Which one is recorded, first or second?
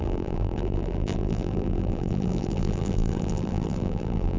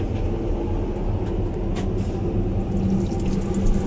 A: second